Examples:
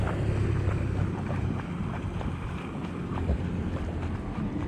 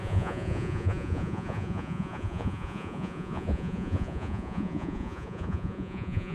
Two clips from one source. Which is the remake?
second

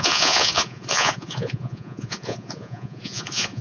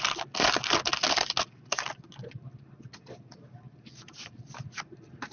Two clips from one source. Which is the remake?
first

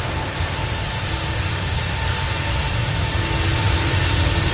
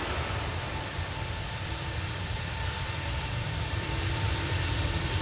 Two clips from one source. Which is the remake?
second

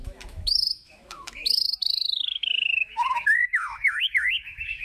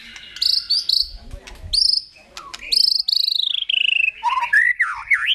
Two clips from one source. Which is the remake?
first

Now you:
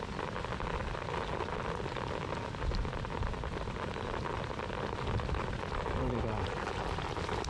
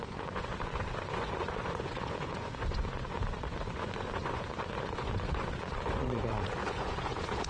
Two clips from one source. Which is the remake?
second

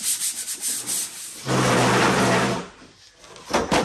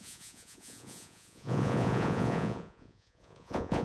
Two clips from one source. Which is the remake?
second